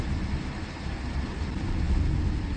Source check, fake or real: real